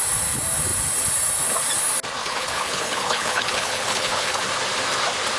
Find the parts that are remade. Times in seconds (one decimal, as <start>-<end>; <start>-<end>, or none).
2.2-4.4